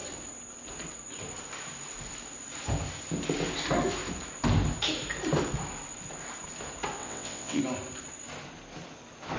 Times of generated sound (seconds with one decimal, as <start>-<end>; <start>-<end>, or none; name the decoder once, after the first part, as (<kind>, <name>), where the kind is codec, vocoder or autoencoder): 7.0-7.6 (vocoder, WaveNeXt)